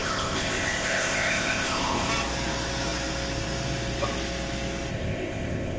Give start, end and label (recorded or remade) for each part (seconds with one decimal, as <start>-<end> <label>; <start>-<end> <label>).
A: 0.0-2.1 remade; 2.1-4.9 recorded; 4.9-5.8 remade